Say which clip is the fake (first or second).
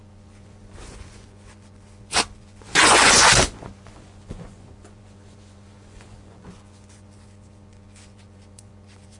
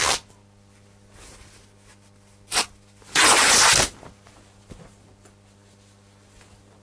first